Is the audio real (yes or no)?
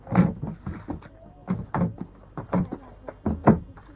yes